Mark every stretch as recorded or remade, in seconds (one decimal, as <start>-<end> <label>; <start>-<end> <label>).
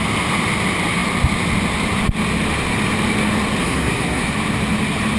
0.0-3.6 recorded; 3.6-4.3 remade; 4.3-5.2 recorded